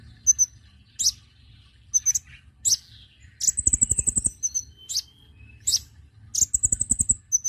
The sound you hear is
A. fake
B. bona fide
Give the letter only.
B